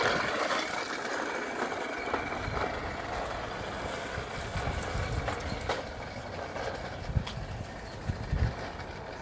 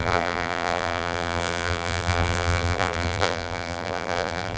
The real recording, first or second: first